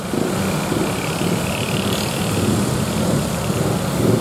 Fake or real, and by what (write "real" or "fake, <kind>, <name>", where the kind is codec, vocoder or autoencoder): real